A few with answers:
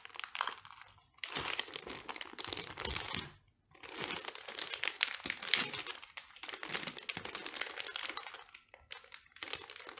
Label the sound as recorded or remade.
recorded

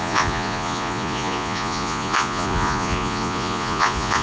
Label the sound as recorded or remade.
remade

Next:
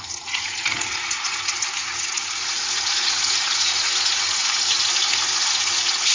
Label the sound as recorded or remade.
remade